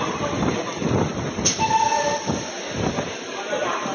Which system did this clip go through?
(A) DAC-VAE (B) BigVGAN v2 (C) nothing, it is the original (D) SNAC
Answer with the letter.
C